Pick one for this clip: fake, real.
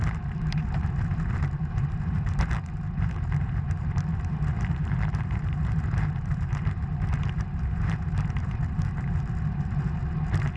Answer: fake